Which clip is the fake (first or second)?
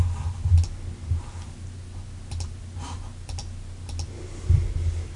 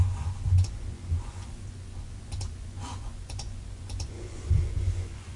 second